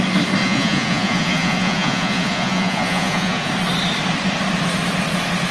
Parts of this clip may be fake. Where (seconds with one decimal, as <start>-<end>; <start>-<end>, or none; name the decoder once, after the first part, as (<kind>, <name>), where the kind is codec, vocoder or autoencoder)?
0.4-3.5 (vocoder, Vocos)